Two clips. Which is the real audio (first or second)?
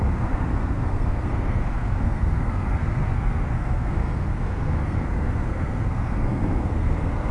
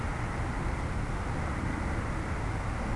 second